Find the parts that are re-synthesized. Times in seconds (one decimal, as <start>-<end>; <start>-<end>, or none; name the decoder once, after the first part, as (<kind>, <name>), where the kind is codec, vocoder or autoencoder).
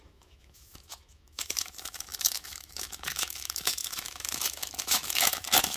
0.0-5.8 (autoencoder, DAC-VAE)